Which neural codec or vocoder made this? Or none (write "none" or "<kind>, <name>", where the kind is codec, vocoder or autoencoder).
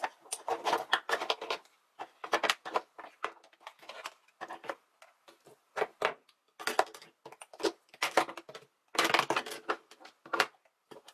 none